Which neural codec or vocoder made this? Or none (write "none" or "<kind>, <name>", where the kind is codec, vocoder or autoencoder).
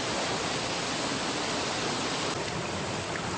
none